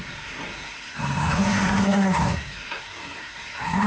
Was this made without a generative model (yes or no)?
no